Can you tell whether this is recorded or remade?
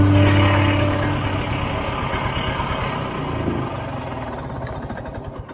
recorded